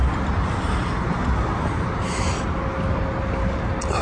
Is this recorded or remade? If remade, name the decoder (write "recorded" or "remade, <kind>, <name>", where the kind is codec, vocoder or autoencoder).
recorded